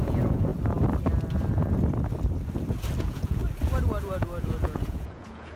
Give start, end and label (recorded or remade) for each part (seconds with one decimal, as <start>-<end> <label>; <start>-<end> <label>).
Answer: 0.0-0.5 remade; 0.5-3.0 recorded; 3.0-3.4 remade; 3.4-4.0 recorded; 4.0-5.6 remade